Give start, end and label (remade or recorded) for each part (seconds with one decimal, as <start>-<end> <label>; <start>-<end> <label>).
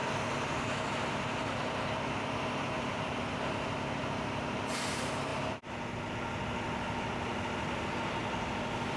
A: 0.0-0.5 remade; 0.5-9.0 recorded